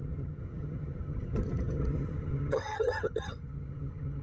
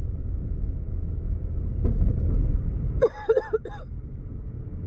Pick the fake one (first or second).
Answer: first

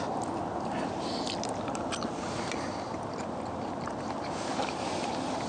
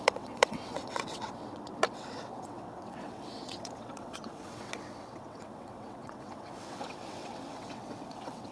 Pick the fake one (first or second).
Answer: second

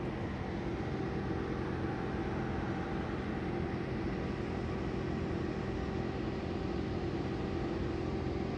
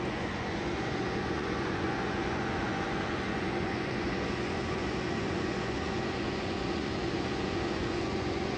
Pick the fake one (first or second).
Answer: second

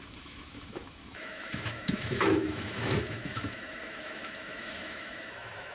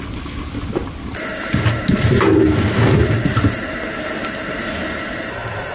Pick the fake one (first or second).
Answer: first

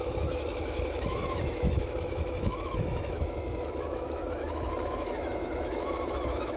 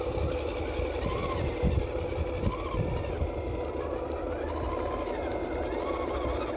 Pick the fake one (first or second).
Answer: first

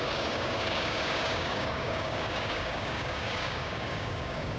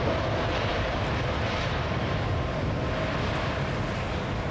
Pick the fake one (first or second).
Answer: first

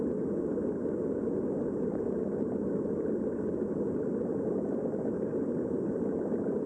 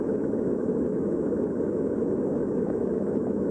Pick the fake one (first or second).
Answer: second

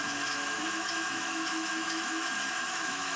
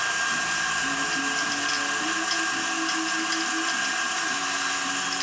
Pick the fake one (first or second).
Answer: first